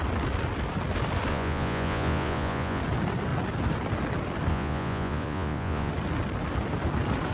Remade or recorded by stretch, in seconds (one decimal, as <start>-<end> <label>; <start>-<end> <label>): 0.0-1.3 recorded; 1.3-2.8 remade; 2.8-4.5 recorded; 4.5-5.9 remade; 5.9-7.3 recorded